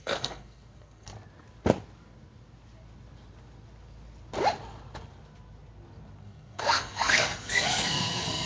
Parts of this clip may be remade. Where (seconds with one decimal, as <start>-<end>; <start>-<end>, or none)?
0.0-1.1; 6.2-8.5